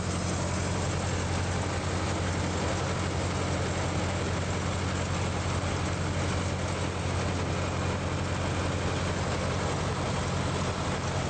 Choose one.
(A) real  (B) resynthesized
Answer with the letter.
A